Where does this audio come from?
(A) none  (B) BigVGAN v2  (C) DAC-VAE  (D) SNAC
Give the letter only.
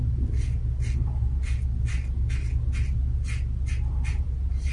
A